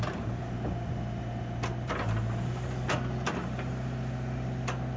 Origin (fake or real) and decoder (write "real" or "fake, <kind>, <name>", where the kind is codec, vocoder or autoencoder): real